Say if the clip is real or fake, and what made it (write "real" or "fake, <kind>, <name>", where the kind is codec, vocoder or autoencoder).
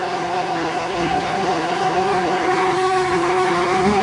fake, codec, SNAC